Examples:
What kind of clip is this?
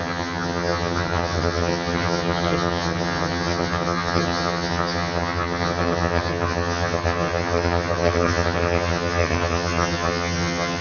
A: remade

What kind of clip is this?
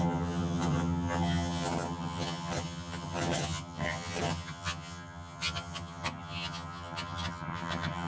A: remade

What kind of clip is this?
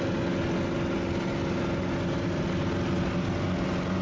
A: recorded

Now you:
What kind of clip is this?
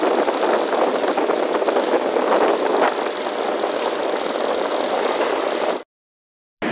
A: recorded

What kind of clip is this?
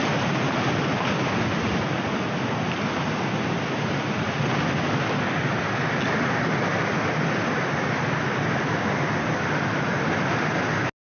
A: recorded